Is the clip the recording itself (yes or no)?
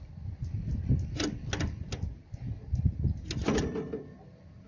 yes